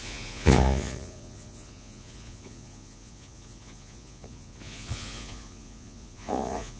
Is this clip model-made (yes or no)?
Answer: yes